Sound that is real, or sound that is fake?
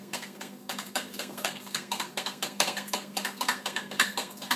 fake